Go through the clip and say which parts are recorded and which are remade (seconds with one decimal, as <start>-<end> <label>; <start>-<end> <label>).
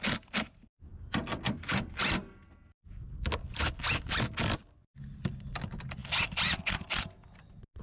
0.0-7.8 recorded